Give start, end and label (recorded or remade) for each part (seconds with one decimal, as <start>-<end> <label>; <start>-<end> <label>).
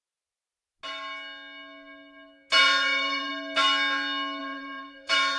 0.0-2.6 recorded; 2.6-3.3 remade; 3.3-4.4 recorded; 4.4-5.4 remade